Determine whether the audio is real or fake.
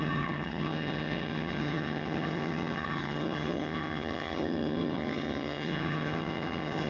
fake